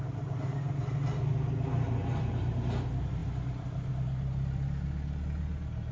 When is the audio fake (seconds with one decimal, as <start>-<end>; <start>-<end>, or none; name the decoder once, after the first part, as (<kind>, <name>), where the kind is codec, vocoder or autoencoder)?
none